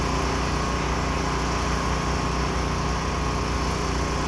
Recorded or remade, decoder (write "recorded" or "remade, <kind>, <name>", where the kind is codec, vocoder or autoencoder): recorded